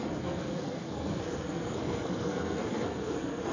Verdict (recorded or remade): remade